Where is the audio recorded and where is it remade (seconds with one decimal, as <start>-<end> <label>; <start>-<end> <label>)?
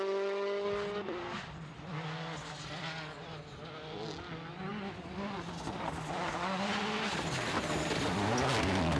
0.0-9.0 recorded